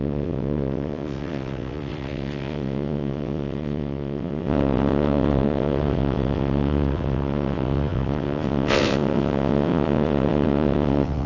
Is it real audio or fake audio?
fake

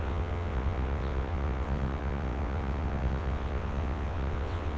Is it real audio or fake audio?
fake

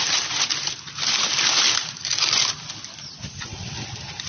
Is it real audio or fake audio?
real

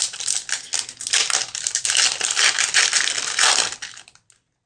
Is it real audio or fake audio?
real